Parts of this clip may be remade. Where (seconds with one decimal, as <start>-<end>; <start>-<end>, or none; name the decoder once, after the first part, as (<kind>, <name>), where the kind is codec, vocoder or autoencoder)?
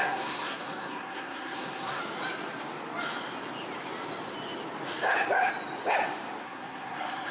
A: 0.0-2.0 (codec, SNAC); 6.4-7.3